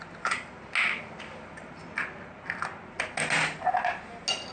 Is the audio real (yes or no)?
yes